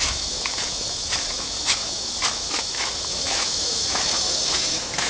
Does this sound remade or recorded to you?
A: remade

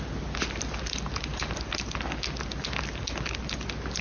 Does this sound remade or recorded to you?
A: recorded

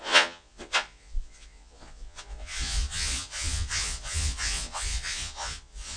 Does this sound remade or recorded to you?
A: remade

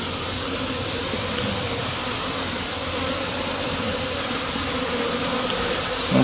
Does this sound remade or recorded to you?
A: recorded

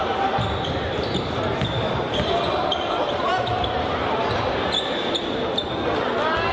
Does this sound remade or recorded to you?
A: recorded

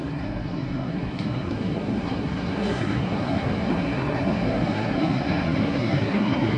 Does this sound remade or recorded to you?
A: remade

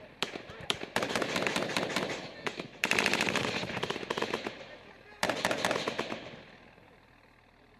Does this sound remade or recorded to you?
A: recorded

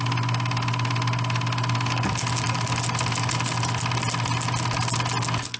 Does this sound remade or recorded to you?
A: recorded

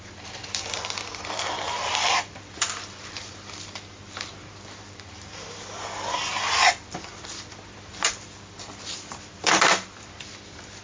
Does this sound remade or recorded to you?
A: remade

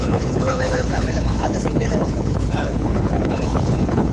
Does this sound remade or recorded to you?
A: remade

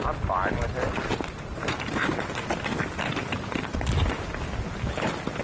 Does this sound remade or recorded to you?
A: recorded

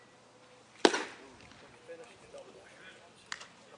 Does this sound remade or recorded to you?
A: recorded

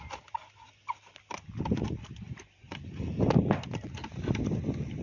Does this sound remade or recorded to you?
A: recorded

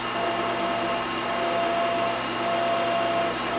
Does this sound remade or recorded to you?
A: recorded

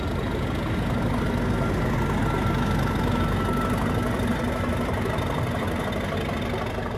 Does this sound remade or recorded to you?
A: recorded